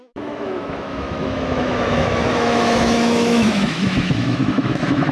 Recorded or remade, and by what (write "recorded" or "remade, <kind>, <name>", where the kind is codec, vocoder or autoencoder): remade, autoencoder, DAC-VAE